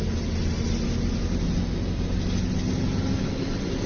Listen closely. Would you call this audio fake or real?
real